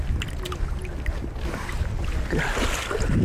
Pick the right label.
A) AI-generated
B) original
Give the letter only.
B